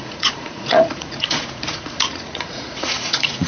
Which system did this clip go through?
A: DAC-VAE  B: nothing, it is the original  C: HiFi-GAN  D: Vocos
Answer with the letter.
D